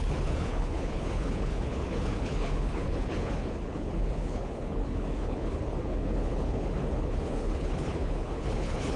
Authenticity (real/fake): fake